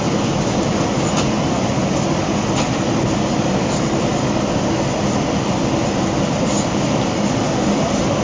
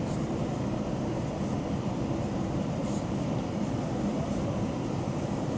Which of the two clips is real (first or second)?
first